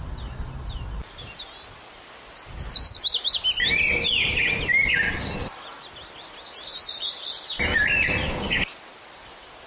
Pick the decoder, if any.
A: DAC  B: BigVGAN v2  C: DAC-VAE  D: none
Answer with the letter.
D